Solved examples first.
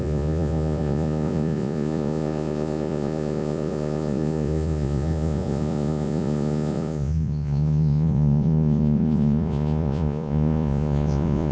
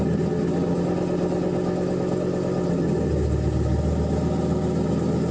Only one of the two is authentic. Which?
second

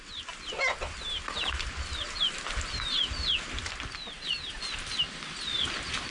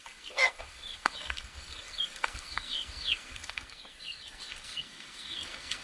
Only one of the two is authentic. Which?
first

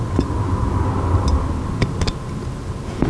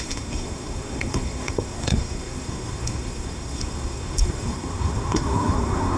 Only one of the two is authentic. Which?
first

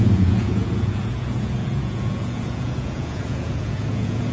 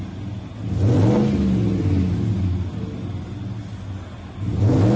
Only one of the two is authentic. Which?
second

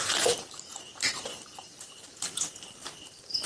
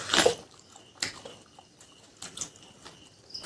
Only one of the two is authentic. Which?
second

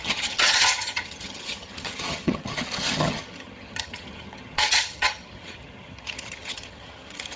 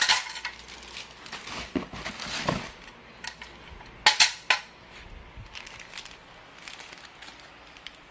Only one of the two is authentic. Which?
second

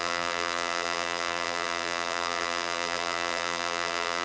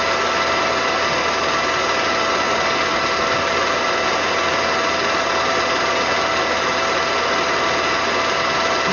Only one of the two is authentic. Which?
second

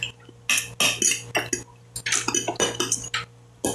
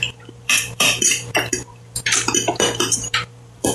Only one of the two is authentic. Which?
first